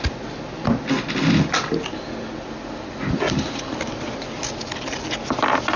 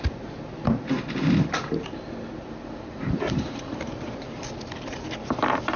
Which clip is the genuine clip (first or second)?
first